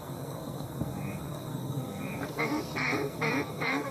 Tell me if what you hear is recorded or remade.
remade